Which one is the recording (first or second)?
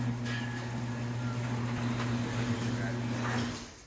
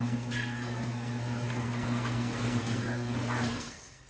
first